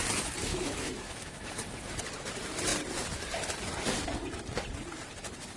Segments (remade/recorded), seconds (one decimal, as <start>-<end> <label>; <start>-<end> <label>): 0.0-0.5 recorded; 0.5-1.4 remade; 1.4-5.6 recorded